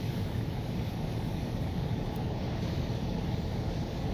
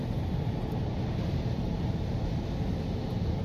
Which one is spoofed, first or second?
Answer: first